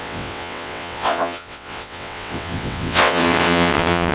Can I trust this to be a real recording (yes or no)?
no